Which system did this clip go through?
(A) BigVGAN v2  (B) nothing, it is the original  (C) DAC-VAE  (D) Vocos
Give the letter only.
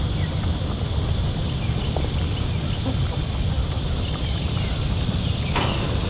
B